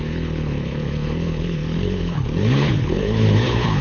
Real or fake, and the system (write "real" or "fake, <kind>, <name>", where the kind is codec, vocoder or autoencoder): fake, codec, HILCodec